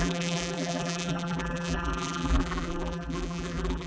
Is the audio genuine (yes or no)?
no